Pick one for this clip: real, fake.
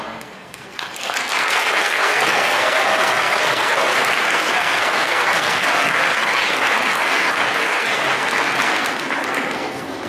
fake